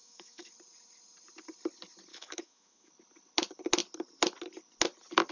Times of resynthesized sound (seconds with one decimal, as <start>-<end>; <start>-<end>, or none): 0.0-0.5; 2.1-2.9